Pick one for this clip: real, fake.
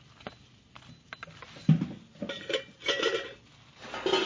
real